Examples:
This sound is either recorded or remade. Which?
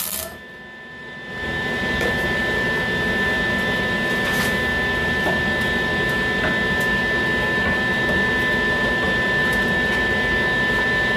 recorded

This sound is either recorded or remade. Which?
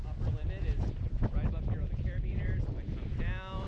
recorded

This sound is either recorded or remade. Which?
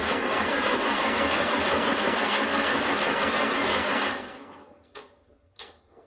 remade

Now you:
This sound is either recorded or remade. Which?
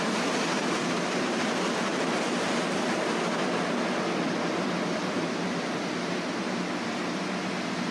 recorded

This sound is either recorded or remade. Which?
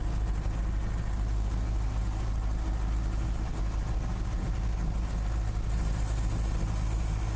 recorded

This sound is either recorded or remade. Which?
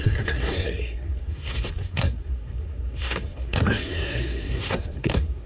remade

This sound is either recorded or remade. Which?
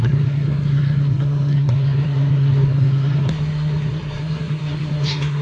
remade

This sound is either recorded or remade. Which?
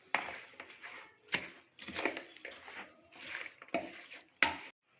recorded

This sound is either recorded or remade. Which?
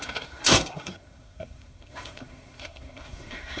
remade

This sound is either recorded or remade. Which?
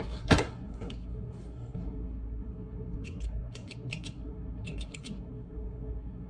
remade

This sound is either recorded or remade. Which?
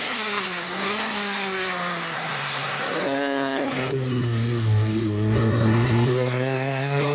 remade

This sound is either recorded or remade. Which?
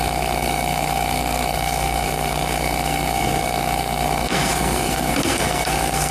remade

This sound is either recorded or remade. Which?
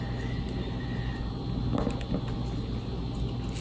recorded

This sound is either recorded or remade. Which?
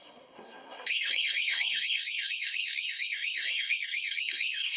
remade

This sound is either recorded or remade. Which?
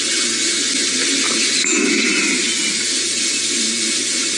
recorded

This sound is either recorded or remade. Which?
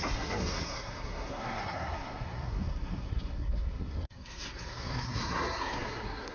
remade